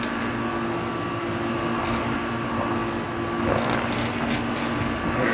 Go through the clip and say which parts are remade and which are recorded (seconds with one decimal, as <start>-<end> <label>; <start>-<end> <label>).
0.0-5.3 recorded